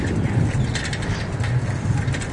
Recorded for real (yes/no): yes